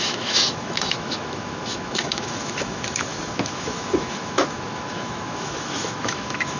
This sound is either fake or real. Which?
fake